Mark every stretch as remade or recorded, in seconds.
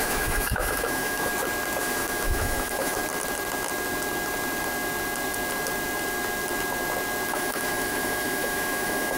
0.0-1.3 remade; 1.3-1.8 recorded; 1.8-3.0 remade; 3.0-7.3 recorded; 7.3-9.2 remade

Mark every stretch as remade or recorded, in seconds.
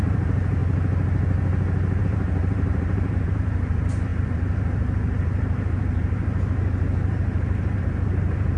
0.0-0.6 remade; 0.6-2.0 recorded; 2.0-8.6 remade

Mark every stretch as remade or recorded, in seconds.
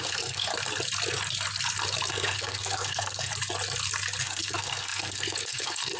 0.0-0.5 remade; 0.5-2.1 recorded; 2.1-3.3 remade; 3.3-4.2 recorded; 4.2-6.0 remade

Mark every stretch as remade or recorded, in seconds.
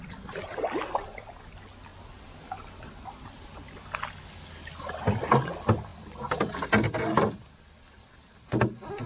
0.0-9.1 recorded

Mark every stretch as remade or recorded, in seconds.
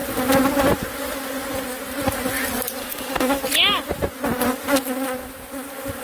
0.0-2.8 recorded; 2.8-3.4 remade; 3.4-6.0 recorded